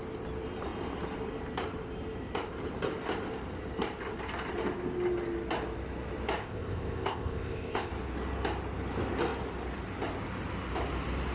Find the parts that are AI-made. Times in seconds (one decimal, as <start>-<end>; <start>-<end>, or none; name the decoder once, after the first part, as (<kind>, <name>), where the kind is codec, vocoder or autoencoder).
6.4-7.9 (codec, ZipCodec)